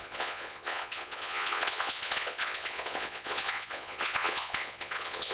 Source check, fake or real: fake